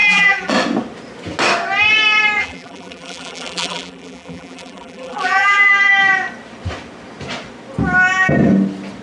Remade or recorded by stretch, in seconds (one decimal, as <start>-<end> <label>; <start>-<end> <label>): 0.0-0.5 remade; 0.5-2.4 recorded; 2.4-5.7 remade; 5.7-9.0 recorded

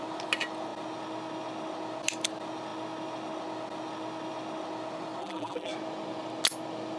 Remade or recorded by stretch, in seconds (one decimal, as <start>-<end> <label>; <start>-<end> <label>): 0.0-5.2 recorded; 5.2-5.7 remade; 5.7-7.0 recorded

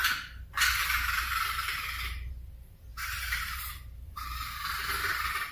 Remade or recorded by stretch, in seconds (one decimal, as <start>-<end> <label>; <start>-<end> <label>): 0.0-0.8 recorded; 0.8-2.3 remade; 2.3-2.9 recorded; 2.9-3.7 remade; 3.7-5.5 recorded

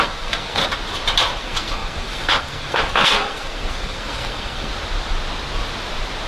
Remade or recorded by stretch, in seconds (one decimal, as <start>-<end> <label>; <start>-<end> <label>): 0.0-0.6 remade; 0.6-1.4 recorded; 1.4-4.7 remade; 4.7-6.3 recorded

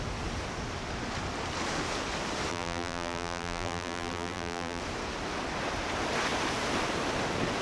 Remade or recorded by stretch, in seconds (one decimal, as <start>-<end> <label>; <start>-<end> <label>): 0.0-2.5 recorded; 2.5-4.8 remade; 4.8-7.6 recorded